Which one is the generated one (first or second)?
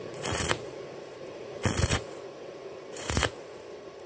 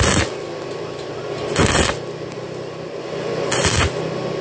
first